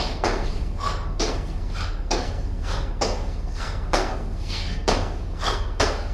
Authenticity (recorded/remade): remade